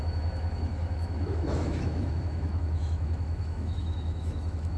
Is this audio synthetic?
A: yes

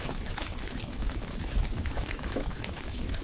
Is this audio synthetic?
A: yes